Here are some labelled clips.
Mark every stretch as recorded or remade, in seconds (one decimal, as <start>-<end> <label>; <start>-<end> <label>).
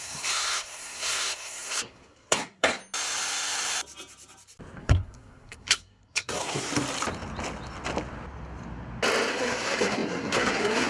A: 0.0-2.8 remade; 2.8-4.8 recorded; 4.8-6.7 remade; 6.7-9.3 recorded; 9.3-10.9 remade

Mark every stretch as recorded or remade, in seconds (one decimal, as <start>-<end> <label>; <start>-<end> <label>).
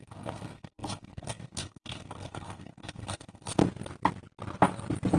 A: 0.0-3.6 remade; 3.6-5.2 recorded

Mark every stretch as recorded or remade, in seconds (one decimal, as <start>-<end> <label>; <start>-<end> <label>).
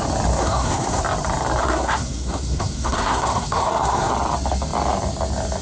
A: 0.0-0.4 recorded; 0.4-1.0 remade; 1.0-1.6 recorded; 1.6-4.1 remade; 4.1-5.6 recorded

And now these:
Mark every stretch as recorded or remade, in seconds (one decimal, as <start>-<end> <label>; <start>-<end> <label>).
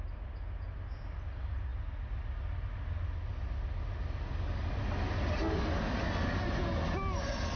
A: 0.0-7.6 recorded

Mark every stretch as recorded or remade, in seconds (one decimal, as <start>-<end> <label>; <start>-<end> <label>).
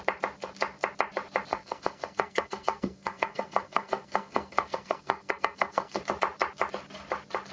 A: 0.0-1.5 recorded; 1.5-6.0 remade; 6.0-7.5 recorded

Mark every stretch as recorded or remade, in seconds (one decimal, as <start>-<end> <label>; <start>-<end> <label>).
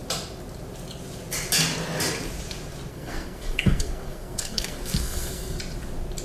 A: 0.0-2.9 recorded; 2.9-5.6 remade; 5.6-6.2 recorded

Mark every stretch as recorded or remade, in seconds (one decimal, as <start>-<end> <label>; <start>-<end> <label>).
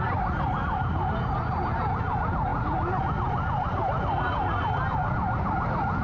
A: 0.0-6.0 recorded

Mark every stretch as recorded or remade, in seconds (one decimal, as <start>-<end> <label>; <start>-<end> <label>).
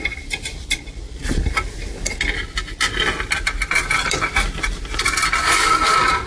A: 0.0-6.3 recorded